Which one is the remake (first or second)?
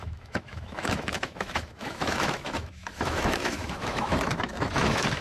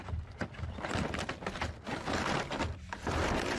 first